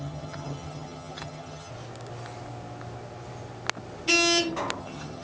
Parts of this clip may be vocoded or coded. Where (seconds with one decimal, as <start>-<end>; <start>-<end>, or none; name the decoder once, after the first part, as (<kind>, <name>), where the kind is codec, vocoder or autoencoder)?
0.0-1.7 (vocoder, HiFi-GAN); 4.8-5.2